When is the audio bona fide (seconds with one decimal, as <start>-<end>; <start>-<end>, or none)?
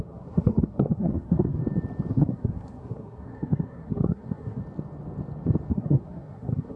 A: 1.6-2.1; 4.6-5.7